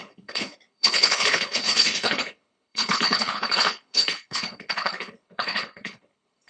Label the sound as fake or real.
fake